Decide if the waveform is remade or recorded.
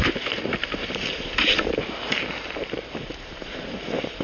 remade